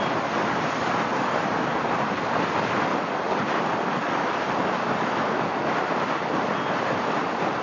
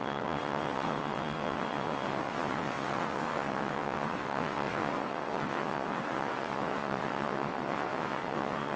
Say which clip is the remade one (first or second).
second